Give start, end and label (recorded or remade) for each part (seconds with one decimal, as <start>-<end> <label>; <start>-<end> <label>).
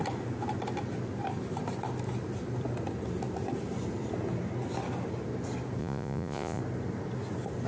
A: 0.0-5.8 recorded; 5.8-6.6 remade; 6.6-7.7 recorded